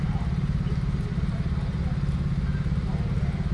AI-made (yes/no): no